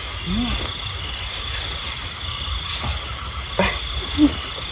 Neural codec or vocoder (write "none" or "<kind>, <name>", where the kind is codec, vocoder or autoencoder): none